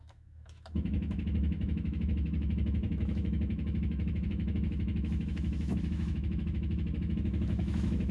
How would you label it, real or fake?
fake